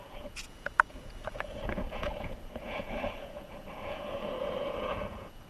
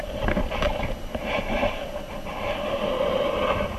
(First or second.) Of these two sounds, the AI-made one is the first